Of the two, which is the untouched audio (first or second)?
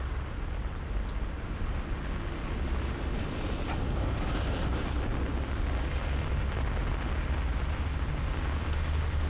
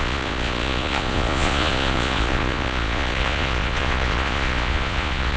first